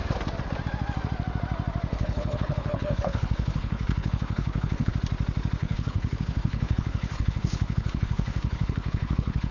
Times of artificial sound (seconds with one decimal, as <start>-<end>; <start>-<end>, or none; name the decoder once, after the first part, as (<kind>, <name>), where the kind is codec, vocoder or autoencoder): 1.9-4.9 (codec, HILCodec); 5.6-9.5